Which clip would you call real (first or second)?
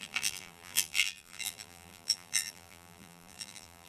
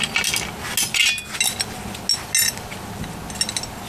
second